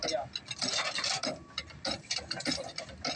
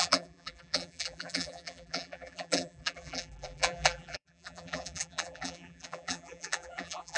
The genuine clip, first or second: first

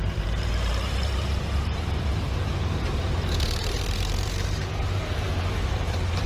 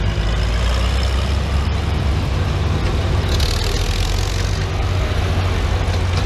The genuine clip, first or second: second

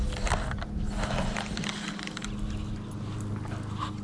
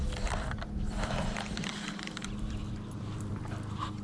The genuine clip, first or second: first